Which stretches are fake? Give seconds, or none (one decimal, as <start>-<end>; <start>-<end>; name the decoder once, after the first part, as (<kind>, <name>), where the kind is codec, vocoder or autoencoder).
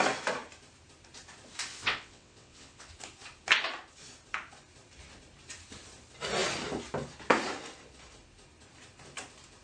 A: 1.7-2.9 (vocoder, WaveNeXt)